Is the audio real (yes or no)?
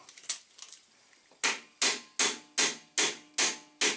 yes